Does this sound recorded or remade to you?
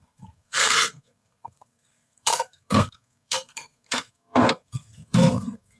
remade